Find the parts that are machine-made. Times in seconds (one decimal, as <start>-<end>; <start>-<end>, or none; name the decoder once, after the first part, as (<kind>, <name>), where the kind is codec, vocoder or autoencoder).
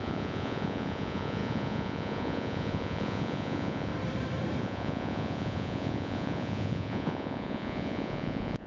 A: 0.0-3.9 (vocoder, Vocos); 4.6-8.7